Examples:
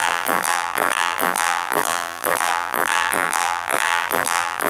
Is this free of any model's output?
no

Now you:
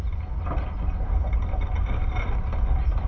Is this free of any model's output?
yes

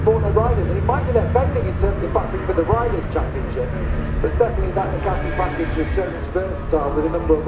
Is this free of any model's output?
yes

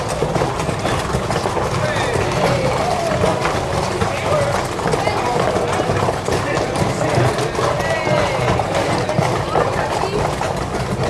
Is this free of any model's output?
yes